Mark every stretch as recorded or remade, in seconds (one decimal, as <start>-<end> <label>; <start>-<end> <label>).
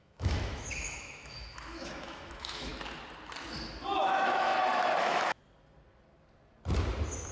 0.0-2.7 remade; 2.7-4.0 recorded; 4.0-4.5 remade; 4.5-5.0 recorded; 5.0-5.4 remade; 5.4-7.3 recorded